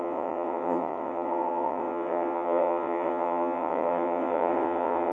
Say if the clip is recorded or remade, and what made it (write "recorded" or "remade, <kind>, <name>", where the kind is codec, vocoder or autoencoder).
remade, vocoder, WaveNeXt